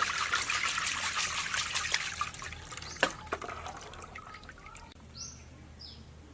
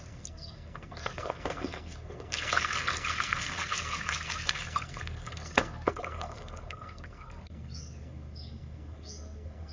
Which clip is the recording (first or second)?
first